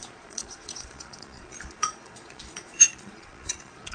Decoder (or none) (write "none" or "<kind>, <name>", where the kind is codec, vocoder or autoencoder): vocoder, Vocos